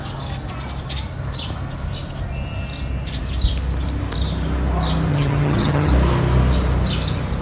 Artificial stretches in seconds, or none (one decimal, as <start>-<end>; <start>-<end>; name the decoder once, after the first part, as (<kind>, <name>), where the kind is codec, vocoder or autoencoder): 5.1-5.9 (vocoder, HiFi-GAN)

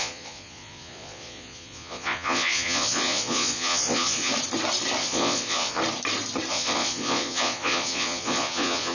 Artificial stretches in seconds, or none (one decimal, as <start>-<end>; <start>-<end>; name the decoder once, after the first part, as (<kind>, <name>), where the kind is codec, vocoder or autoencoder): 0.0-4.3 (vocoder, Vocos); 5.0-5.8; 6.5-8.9

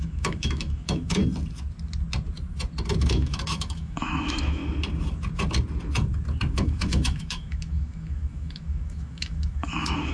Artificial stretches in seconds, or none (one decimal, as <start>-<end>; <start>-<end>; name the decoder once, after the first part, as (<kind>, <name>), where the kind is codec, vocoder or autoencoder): 0.0-1.2 (autoencoder, DAC-VAE); 3.0-4.6; 6.5-10.1

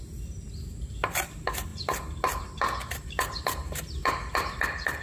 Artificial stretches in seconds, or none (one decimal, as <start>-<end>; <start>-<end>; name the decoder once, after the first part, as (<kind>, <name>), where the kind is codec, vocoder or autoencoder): 1.7-4.1 (vocoder, BigVGAN v2)

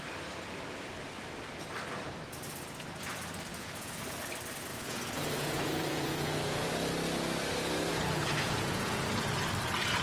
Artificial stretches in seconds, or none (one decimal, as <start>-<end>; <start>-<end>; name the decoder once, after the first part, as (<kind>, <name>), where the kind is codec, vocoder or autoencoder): 3.5-4.1 (vocoder, Vocos); 4.7-6.7; 7.9-9.0

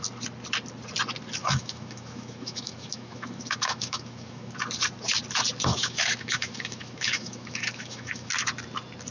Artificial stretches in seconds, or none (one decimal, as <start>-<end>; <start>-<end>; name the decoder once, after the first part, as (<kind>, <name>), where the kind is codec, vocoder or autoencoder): 1.4-4.6 (autoencoder, DAC-VAE); 5.7-8.3